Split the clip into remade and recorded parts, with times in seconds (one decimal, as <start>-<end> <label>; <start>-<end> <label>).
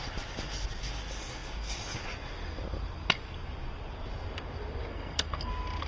0.0-4.9 recorded; 4.9-5.5 remade; 5.5-5.9 recorded